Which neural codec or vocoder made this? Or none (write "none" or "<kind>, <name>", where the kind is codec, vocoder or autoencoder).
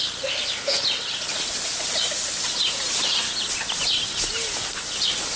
none